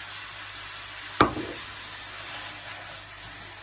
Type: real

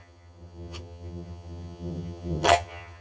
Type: fake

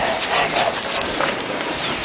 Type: real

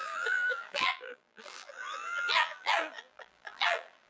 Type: fake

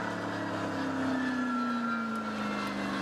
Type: real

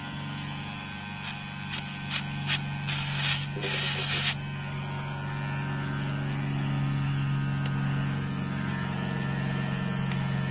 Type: real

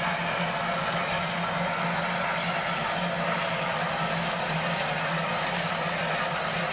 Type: real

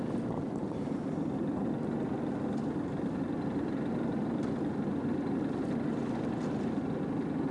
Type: real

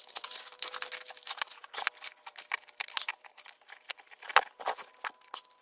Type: real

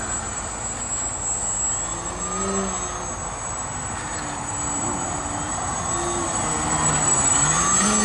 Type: real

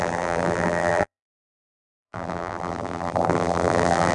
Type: fake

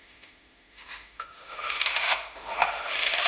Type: fake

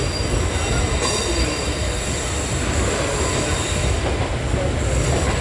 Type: real